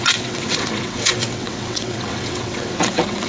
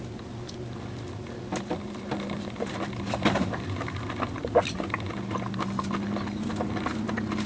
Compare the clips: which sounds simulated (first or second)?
first